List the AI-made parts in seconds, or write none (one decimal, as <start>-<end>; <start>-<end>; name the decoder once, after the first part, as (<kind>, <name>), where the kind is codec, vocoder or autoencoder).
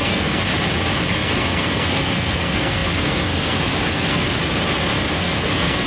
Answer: 0.0-0.5 (codec, SNAC); 1.0-4.4; 5.1-5.9